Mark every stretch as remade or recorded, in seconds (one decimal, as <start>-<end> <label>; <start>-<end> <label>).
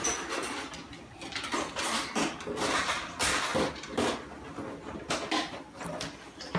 0.0-6.6 recorded